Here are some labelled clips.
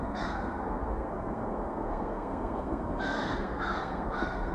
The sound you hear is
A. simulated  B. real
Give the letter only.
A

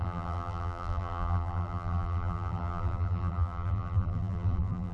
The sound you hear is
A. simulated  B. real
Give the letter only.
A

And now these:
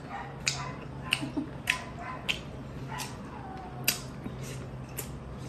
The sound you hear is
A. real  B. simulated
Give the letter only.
A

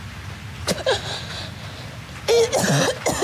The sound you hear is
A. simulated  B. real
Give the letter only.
B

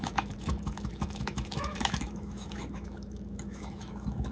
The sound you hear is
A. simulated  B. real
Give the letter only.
A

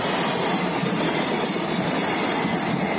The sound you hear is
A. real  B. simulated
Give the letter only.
B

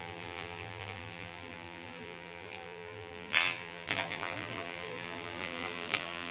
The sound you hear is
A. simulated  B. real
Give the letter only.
A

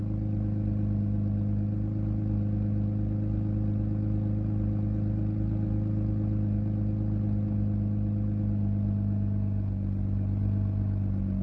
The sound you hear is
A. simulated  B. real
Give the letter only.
B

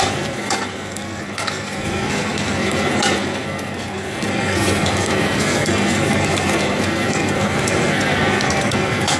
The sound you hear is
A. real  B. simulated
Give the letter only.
B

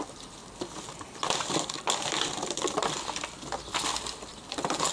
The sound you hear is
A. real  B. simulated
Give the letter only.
A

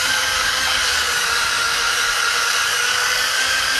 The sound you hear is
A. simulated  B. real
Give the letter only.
A